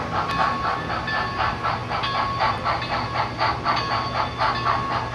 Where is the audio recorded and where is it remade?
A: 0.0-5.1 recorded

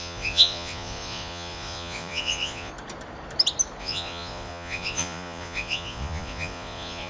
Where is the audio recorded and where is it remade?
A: 0.0-2.7 remade; 2.7-3.8 recorded; 3.8-7.1 remade

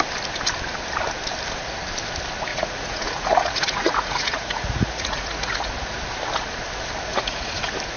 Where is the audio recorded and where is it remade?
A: 0.0-2.5 recorded; 2.5-5.7 remade; 5.7-7.1 recorded; 7.1-7.6 remade; 7.6-8.0 recorded

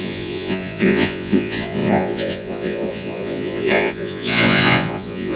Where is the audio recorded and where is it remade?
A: 0.0-5.4 remade